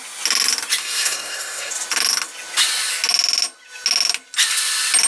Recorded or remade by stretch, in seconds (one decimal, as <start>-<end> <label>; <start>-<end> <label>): 0.0-0.8 recorded; 0.8-1.7 remade; 1.7-5.1 recorded